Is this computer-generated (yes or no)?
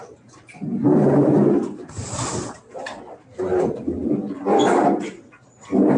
yes